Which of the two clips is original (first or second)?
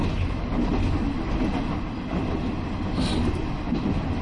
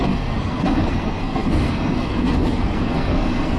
first